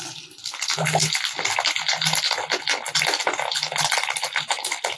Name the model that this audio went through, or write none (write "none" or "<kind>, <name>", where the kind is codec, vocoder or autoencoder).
none